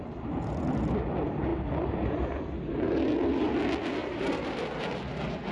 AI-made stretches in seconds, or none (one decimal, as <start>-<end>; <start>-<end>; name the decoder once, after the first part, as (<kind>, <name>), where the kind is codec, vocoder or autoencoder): 4.0-4.6 (vocoder, BigVGAN v2)